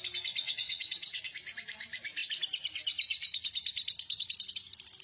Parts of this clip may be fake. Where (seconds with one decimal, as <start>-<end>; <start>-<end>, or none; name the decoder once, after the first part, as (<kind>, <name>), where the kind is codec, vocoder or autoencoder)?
0.4-1.2 (vocoder, WaveNeXt)